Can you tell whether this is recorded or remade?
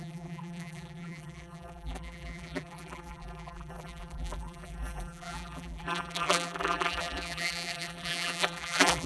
remade